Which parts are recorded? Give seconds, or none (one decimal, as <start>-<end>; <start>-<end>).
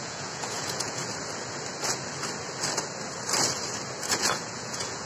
1.0-4.1